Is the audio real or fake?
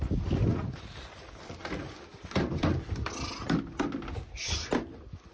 real